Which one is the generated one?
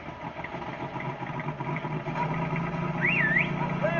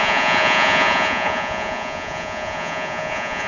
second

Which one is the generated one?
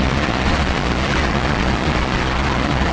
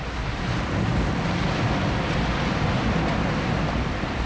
first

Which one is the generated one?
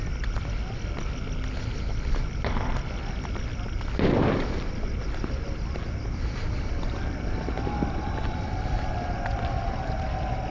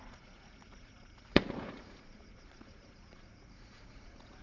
second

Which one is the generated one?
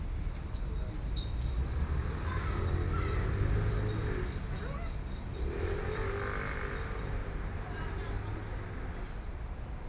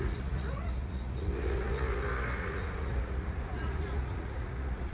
second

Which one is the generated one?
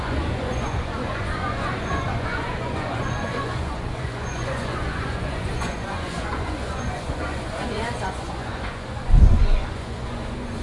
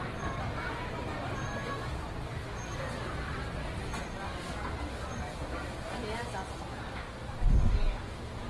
first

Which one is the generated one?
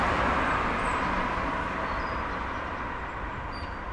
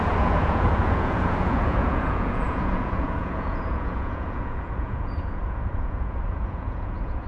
second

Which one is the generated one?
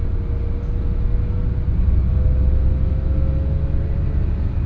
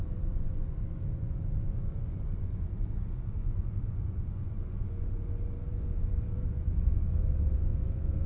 second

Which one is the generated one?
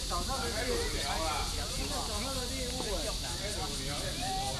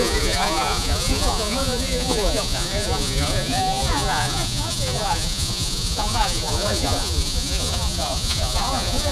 second